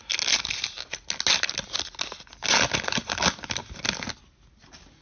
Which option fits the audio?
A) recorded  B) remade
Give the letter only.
A